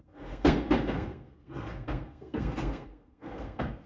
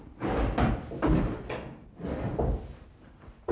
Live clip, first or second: second